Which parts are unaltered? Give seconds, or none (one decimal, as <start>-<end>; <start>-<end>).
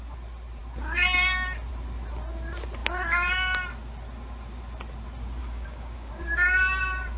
0.0-5.4; 6.1-7.2